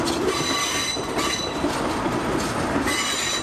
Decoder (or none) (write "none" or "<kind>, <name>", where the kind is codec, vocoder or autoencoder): none